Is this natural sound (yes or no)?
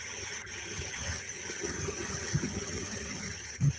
no